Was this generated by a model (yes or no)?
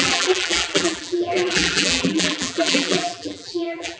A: yes